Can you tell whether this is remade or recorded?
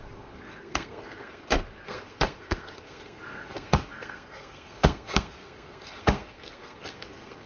remade